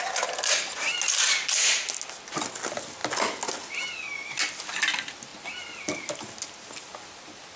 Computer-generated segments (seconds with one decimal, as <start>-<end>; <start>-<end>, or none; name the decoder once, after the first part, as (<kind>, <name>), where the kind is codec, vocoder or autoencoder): none